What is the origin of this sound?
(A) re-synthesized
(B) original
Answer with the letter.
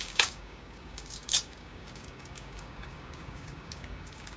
A